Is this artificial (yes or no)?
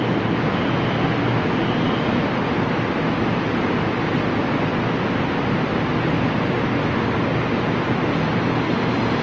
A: no